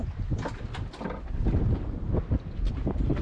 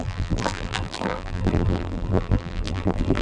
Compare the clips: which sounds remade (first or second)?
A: second